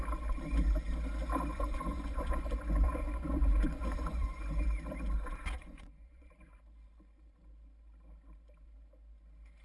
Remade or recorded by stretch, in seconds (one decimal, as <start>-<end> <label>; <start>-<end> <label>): 0.0-1.5 recorded; 1.5-4.6 remade; 4.6-5.6 recorded; 5.6-6.3 remade; 6.3-9.6 recorded